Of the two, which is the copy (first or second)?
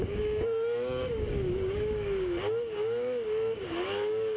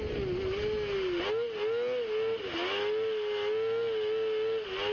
first